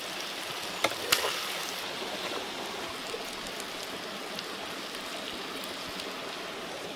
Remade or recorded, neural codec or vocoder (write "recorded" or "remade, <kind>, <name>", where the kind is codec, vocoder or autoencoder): recorded